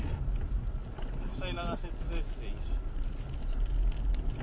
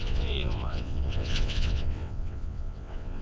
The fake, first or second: second